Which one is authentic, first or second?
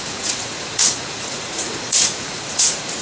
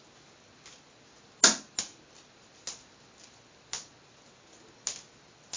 second